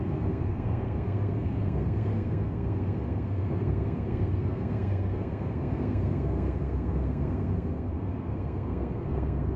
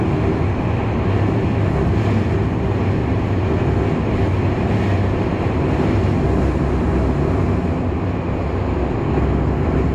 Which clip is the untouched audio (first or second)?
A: second